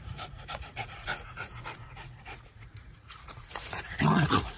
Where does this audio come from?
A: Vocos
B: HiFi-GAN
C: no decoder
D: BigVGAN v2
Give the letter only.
A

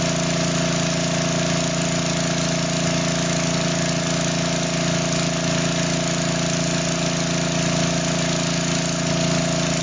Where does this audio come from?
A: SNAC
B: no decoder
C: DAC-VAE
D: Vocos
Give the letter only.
B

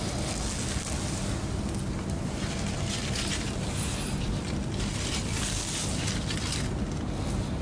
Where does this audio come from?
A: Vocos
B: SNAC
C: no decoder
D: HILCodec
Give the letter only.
C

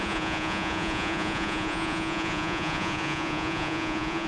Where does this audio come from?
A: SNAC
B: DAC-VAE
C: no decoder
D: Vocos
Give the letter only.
D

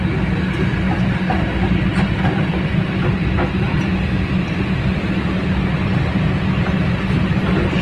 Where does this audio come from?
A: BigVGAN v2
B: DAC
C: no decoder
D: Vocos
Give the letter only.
C